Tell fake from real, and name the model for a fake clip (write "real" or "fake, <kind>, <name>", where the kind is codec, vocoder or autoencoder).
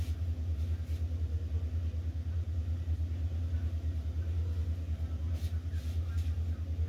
real